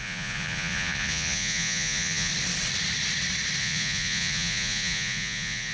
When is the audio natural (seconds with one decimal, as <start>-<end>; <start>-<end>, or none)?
2.3-3.6